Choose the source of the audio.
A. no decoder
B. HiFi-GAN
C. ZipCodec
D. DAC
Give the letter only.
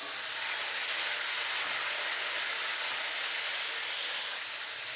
A